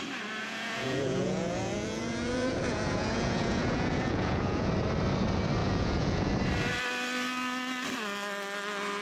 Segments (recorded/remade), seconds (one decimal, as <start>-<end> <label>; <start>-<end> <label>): 0.0-0.4 recorded; 0.4-4.7 remade; 4.7-5.6 recorded; 5.6-6.3 remade; 6.3-9.0 recorded